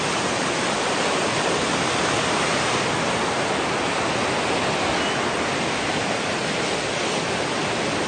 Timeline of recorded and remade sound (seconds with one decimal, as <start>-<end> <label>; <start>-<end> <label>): 0.0-8.1 recorded

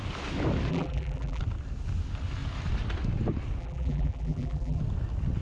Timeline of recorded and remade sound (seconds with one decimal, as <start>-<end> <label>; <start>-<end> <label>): 0.0-0.7 recorded; 0.7-1.4 remade; 1.4-3.6 recorded; 3.6-4.8 remade; 4.8-5.4 recorded

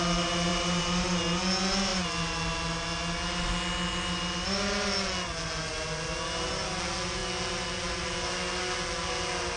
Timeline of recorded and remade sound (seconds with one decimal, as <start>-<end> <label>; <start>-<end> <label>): 0.0-0.5 recorded; 0.5-1.1 remade; 1.1-9.6 recorded

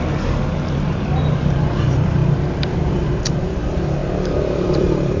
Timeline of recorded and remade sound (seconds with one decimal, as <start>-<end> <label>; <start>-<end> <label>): 0.0-4.0 remade; 4.0-4.7 recorded; 4.7-5.2 remade

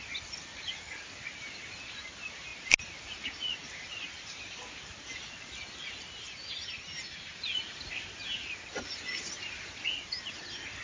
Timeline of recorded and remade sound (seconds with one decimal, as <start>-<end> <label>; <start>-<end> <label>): 0.0-10.8 recorded

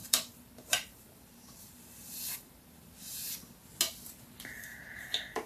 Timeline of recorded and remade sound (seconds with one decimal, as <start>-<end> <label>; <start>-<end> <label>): 0.0-3.3 remade; 3.3-5.5 recorded

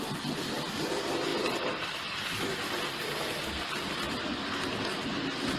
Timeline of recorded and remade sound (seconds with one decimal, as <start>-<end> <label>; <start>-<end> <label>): 0.0-1.3 recorded; 1.3-2.0 remade; 2.0-5.6 recorded

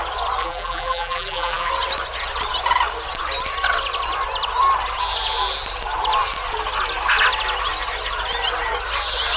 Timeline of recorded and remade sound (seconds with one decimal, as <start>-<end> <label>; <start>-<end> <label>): 0.0-0.4 recorded; 0.4-1.7 remade; 1.7-9.4 recorded